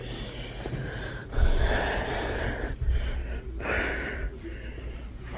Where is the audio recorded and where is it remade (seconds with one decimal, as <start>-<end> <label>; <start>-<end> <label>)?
0.0-5.4 recorded